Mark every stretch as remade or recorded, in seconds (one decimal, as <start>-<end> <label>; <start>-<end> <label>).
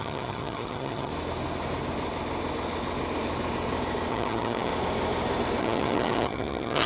0.0-1.1 remade; 1.1-4.1 recorded; 4.1-4.7 remade; 4.7-5.6 recorded; 5.6-6.9 remade